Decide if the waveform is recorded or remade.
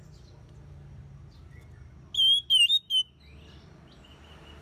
recorded